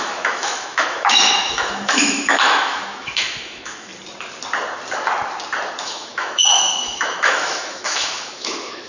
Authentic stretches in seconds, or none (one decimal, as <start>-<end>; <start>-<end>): 3.9-5.8